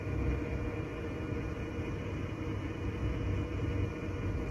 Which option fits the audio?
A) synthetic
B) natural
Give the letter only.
B